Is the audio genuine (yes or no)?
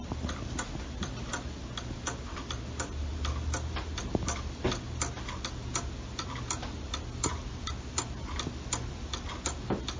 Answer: yes